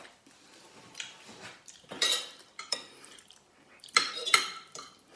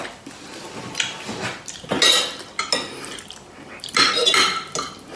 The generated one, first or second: first